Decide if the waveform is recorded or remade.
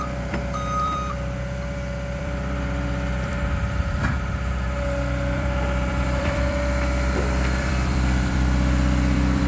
remade